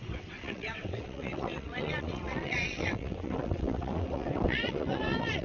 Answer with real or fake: fake